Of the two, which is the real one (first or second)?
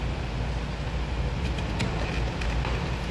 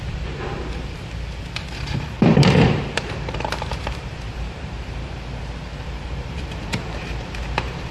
first